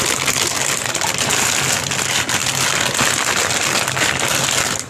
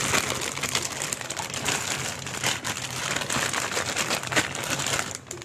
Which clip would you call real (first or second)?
first